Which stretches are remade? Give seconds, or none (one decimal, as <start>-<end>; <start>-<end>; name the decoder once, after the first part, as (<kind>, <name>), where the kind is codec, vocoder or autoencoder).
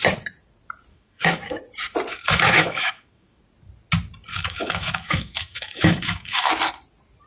0.9-1.6 (autoencoder, DAC-VAE); 2.1-3.4; 4.3-6.5